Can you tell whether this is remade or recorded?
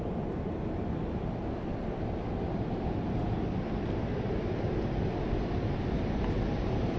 recorded